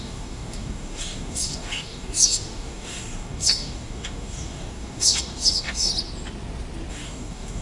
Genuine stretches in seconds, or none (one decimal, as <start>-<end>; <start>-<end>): 5.9-6.9